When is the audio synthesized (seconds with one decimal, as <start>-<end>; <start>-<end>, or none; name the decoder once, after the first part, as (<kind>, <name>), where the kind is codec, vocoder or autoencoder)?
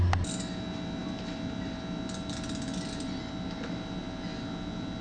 none